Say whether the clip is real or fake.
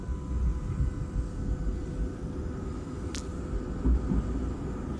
real